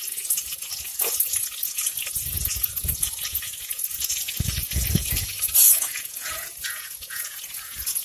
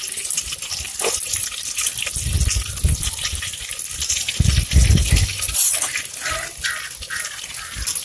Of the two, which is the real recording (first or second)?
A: second